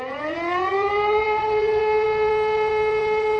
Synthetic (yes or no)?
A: yes